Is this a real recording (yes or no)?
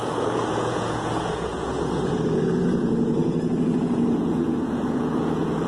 no